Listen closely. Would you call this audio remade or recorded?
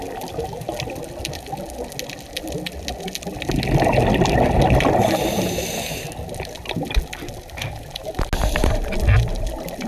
recorded